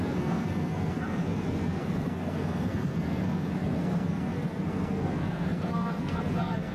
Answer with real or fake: fake